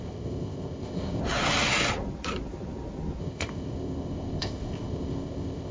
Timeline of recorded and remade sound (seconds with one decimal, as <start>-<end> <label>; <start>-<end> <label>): 0.0-1.2 remade; 1.2-3.2 recorded; 3.2-5.7 remade